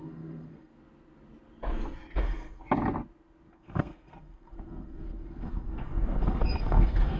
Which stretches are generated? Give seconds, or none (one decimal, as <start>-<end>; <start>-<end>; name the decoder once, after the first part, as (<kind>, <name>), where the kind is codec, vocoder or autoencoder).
0.0-0.7 (codec, SNAC); 2.2-2.6; 3.5-7.2